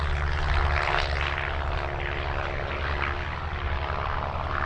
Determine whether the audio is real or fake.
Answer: real